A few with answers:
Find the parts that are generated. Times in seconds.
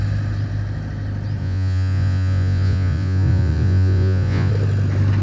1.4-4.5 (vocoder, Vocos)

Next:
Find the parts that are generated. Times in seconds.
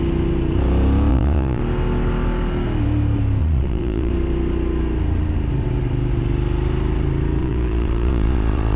1.1-1.6 (vocoder, Vocos); 3.4-4.1; 7.4-8.8